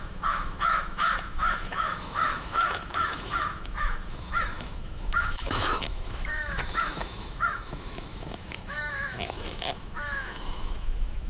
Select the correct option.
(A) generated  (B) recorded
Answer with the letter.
A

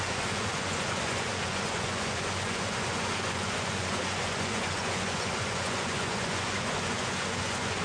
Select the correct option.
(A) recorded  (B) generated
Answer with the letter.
B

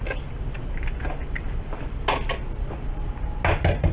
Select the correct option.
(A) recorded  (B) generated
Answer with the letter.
A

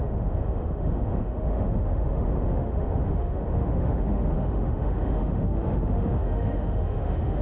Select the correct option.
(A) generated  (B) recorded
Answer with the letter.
A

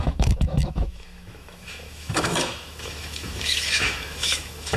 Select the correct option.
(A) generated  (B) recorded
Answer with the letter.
A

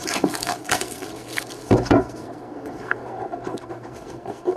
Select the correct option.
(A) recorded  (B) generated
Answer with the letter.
B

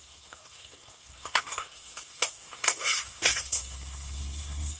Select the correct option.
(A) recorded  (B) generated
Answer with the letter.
B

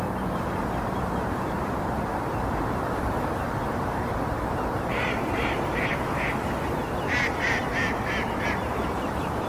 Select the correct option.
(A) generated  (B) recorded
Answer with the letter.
A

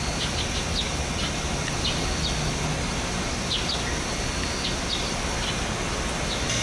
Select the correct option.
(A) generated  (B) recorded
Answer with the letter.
B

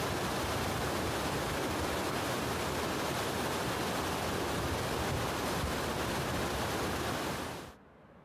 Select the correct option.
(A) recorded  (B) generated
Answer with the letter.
A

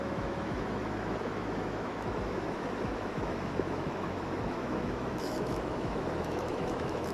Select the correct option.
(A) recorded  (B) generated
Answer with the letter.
B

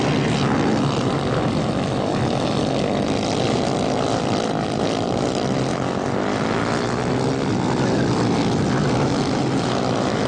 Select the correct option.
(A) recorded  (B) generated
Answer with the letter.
A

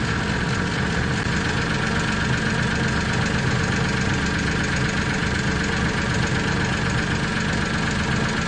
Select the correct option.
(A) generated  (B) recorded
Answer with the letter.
B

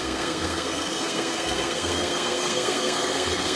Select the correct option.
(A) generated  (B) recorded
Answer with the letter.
A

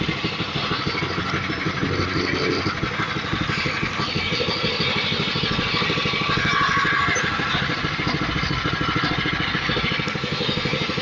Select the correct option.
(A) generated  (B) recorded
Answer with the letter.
B